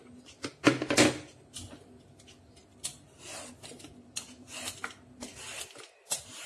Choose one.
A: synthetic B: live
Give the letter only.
B